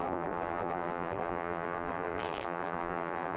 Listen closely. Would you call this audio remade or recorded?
remade